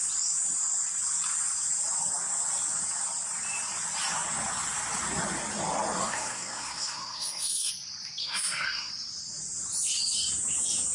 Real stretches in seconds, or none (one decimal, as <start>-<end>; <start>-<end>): 0.0-6.0; 7.7-8.2; 8.9-10.9